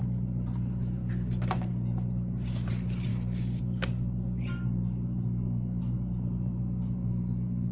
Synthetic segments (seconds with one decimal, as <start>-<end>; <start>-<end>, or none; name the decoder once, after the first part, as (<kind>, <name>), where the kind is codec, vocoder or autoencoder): 1.0-2.7 (codec, DAC); 3.1-5.8